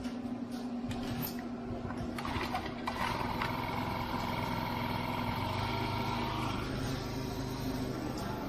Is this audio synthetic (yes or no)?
no